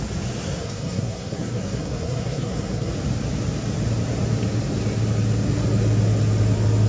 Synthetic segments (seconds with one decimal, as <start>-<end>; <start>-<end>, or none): 0.6-2.9

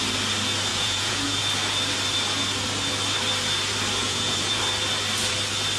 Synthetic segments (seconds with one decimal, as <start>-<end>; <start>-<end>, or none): 0.7-1.4; 4.0-4.6

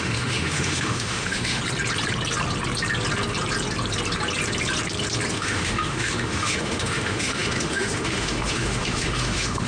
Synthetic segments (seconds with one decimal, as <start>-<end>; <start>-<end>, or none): 0.0-1.6; 5.3-9.7

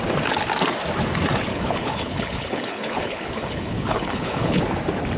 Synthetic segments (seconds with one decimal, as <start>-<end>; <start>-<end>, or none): 1.5-4.6